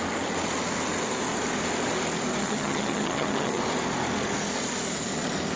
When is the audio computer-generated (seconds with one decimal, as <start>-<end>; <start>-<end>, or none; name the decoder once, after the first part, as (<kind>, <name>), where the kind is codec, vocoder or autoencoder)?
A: 2.4-3.6 (vocoder, HiFi-GAN)